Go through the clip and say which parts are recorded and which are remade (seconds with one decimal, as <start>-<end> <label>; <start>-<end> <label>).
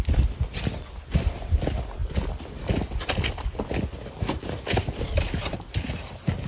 0.0-6.5 recorded